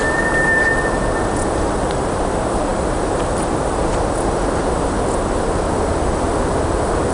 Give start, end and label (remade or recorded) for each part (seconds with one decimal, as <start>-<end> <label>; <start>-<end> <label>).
0.0-7.1 recorded